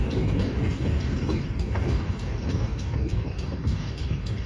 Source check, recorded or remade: remade